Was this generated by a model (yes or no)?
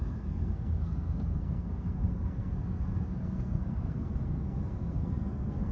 yes